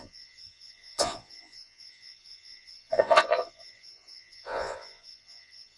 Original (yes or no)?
no